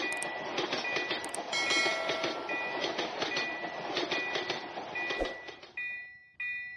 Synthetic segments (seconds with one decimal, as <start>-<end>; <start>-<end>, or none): none